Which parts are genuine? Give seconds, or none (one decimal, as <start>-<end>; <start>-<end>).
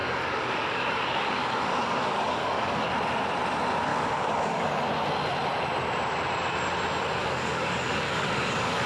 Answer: 2.9-3.9; 4.8-7.2